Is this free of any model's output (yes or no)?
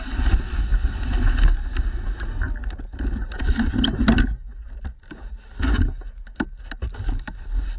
yes